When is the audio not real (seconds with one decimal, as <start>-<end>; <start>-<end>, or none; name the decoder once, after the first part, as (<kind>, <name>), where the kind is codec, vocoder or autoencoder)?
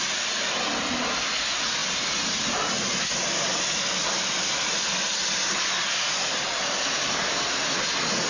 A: none